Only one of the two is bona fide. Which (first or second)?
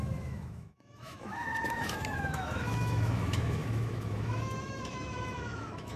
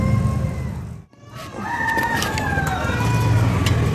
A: second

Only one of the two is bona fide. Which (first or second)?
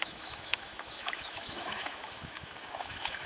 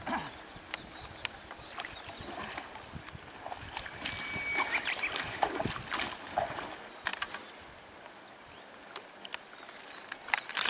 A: second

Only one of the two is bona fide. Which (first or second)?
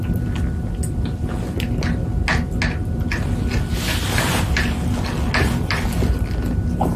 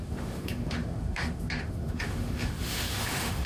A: first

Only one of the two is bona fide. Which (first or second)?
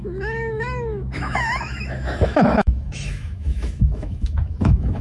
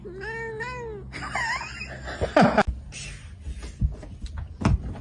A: second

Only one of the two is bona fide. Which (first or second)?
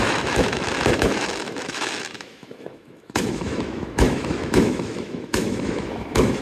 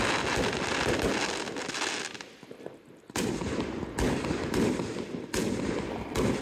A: second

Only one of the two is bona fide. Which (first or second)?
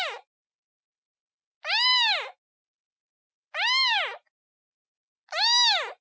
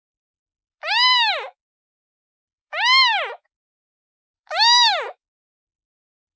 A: first